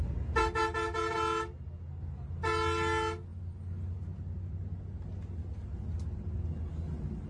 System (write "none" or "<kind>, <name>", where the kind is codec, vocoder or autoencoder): none